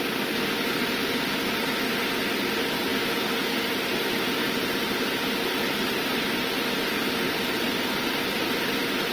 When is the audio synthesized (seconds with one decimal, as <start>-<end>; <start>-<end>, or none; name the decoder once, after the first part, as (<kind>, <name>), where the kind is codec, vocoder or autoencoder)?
none